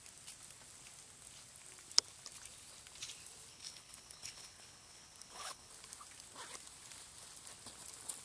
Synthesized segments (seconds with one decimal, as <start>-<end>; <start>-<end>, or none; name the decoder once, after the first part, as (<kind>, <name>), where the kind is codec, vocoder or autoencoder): 3.5-5.7 (codec, HILCodec)